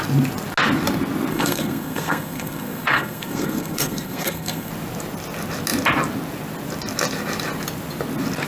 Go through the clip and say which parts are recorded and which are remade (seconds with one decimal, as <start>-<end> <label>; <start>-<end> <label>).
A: 0.0-1.3 recorded; 1.3-4.7 remade; 4.7-8.5 recorded